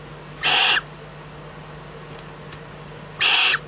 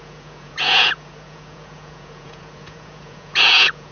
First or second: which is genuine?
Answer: first